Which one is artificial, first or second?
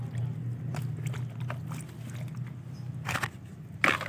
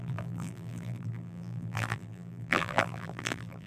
second